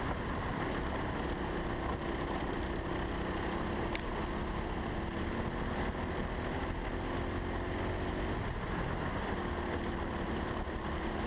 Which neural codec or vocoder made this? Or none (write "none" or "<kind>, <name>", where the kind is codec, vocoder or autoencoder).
none